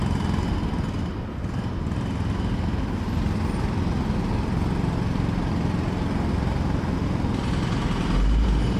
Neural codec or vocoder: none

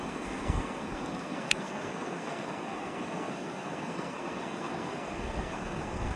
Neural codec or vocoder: codec, SNAC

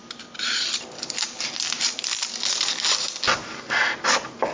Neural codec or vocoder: none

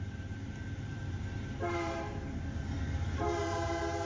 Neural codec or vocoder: vocoder, BigVGAN v2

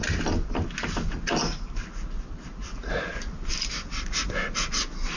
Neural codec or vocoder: none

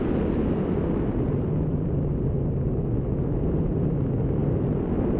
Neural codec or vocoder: none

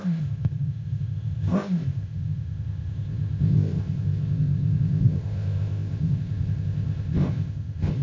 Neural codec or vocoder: codec, ZipCodec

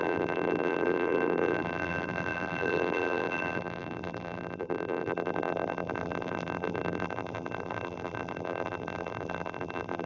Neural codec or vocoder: vocoder, BigVGAN v2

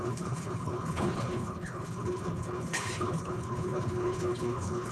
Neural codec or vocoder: codec, HILCodec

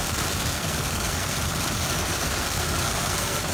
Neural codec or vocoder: codec, SNAC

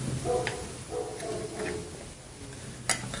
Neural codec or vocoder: none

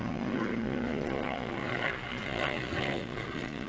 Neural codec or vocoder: vocoder, Vocos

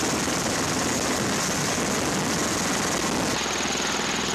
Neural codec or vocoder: none